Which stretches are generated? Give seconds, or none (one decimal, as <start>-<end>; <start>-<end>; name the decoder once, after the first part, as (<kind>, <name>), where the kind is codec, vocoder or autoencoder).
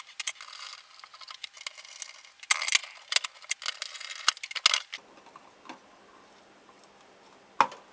none